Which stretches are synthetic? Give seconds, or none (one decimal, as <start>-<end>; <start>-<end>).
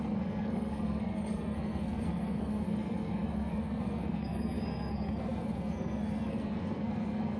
0.0-7.4